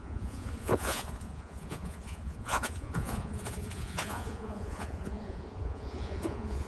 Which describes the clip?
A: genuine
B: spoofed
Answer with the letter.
B